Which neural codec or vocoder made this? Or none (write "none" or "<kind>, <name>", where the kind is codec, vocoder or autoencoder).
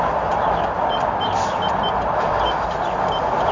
vocoder, BigVGAN v2